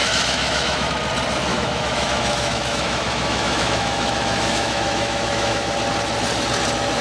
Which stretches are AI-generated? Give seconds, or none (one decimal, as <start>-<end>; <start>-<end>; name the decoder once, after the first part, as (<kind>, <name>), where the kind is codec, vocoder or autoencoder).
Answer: 0.0-0.9 (autoencoder, DAC-VAE); 1.5-5.7